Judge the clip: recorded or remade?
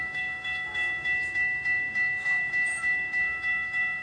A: remade